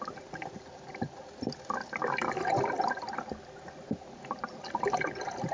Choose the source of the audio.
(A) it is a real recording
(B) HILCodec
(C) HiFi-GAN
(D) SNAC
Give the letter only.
A